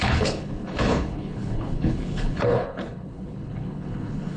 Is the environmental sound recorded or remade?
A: remade